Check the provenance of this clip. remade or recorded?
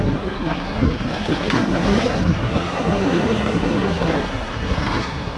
remade